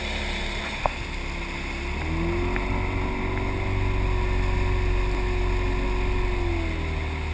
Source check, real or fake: real